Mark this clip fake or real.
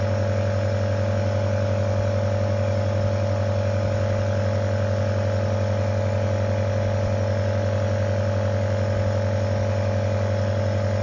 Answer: real